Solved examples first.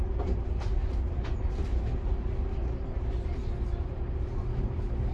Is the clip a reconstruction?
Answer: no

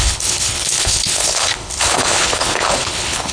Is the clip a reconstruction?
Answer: yes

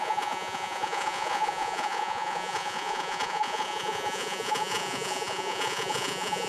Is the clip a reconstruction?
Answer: yes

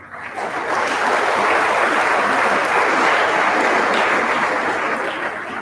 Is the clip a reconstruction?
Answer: no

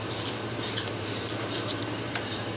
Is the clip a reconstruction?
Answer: yes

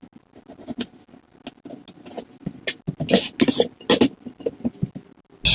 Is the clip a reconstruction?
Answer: no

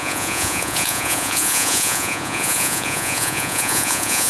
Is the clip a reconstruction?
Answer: yes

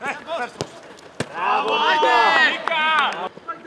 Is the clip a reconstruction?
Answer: no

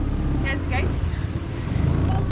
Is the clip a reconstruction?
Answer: no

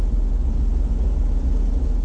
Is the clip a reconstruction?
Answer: no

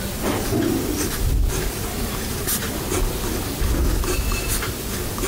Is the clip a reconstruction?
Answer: no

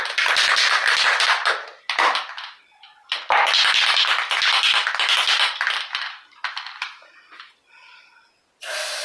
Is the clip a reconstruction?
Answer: no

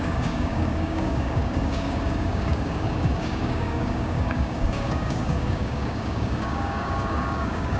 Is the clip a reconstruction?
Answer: yes